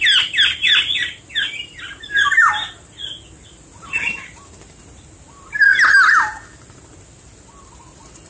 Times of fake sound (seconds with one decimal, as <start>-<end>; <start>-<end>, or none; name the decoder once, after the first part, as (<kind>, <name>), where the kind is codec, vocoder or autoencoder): none